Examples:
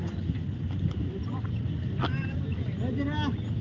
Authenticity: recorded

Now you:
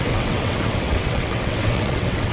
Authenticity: remade